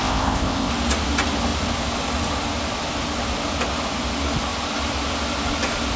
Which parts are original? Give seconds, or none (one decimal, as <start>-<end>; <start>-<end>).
0.7-6.0